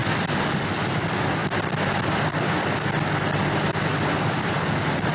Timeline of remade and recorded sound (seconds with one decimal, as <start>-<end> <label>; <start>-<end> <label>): 0.0-5.1 recorded